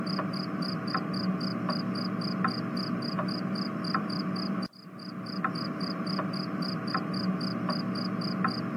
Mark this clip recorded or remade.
recorded